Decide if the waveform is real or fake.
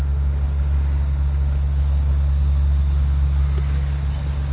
real